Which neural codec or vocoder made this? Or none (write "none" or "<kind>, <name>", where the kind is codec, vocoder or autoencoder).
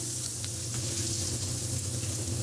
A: vocoder, Vocos